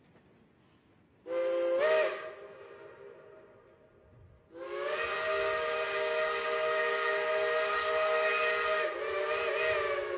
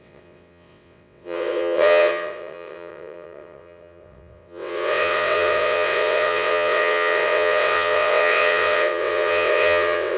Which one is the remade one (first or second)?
second